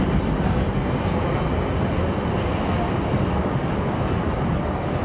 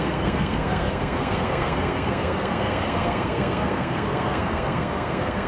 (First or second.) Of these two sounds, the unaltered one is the first